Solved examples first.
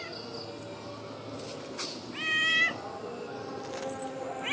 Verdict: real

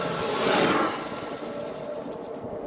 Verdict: real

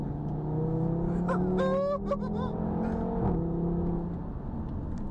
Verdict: real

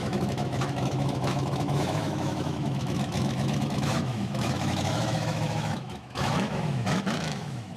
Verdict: fake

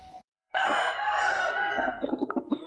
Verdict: fake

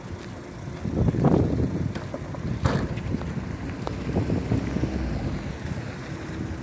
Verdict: real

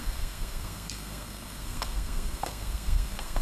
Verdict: fake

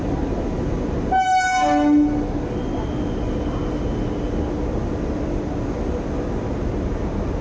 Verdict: real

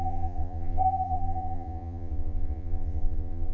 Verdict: fake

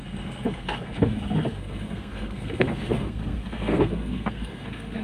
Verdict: fake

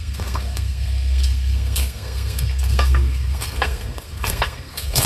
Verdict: fake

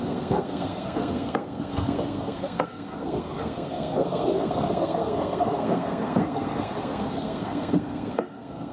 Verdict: fake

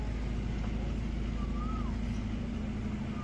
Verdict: real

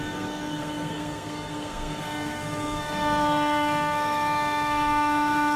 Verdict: fake